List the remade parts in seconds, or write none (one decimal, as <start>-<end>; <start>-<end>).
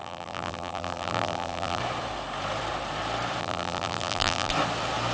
0.0-1.8; 3.4-4.5